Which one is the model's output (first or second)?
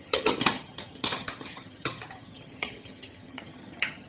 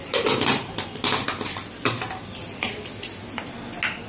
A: first